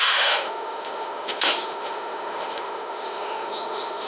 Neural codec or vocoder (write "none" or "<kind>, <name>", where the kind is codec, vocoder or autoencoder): autoencoder, DAC-VAE